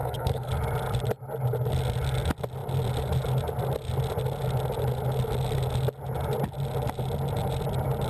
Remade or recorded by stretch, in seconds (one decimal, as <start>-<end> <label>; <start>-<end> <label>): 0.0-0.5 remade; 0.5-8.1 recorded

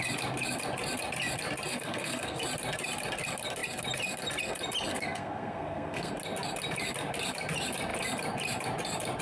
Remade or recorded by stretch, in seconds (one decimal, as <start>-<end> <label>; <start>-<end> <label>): 0.0-1.7 recorded; 1.7-2.4 remade; 2.4-4.9 recorded; 4.9-6.1 remade; 6.1-9.2 recorded

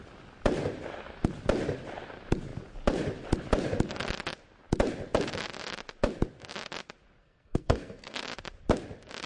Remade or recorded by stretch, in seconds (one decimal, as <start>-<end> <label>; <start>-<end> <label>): 0.0-7.2 recorded; 7.2-8.2 remade; 8.2-9.3 recorded

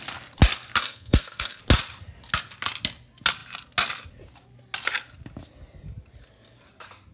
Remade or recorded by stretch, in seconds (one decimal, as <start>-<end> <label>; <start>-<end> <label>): 0.0-0.8 recorded; 0.8-1.6 remade; 1.6-7.1 recorded